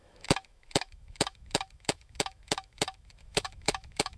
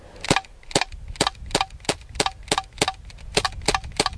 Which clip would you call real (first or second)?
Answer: second